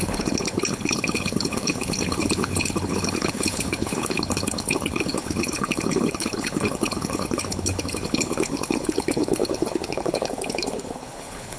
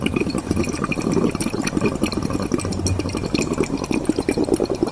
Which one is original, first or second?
second